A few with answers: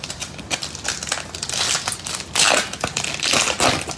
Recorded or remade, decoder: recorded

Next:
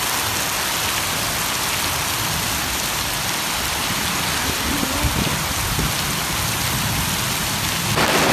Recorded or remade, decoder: recorded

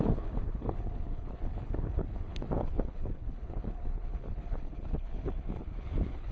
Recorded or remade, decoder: remade, codec, HILCodec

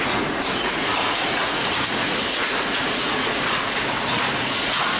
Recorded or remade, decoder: remade, vocoder, Vocos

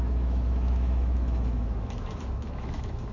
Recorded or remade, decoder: remade, autoencoder, DAC-VAE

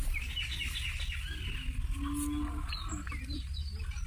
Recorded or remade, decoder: recorded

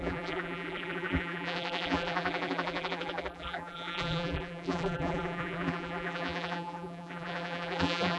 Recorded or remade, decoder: remade, vocoder, BigVGAN v2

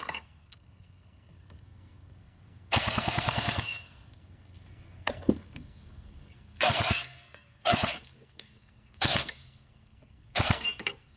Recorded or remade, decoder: remade, codec, SNAC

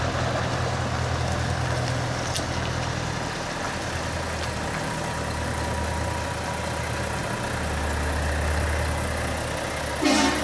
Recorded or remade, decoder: recorded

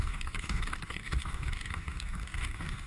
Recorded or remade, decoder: remade, codec, DAC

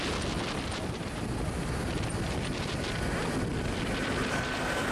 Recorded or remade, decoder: recorded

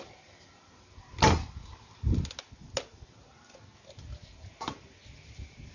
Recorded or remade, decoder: recorded